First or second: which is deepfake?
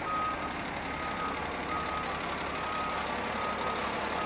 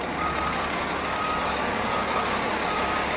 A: second